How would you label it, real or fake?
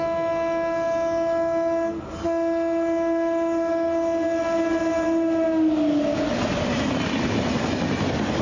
real